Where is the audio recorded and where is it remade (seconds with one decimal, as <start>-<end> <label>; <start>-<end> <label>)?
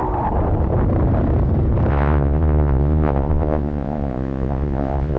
0.0-1.9 recorded; 1.9-5.2 remade